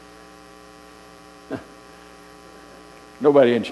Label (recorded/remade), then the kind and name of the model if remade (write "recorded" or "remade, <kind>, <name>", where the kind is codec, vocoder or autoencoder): remade, vocoder, BigVGAN v2